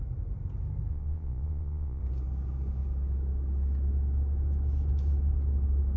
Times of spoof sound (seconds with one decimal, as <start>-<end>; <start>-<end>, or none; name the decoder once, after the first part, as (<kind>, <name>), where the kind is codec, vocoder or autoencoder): 0.9-2.0 (vocoder, Vocos)